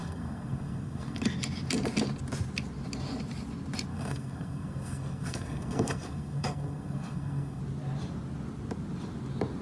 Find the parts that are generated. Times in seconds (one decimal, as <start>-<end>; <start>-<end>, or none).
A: 0.0-1.2; 3.9-7.6